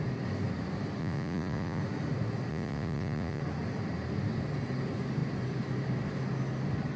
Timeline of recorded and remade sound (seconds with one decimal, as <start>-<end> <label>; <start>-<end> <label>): 0.0-1.0 recorded; 1.0-1.8 remade; 1.8-2.5 recorded; 2.5-3.4 remade; 3.4-7.0 recorded